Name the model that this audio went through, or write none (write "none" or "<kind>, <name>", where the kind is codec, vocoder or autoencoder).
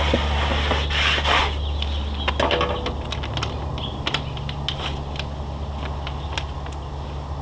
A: none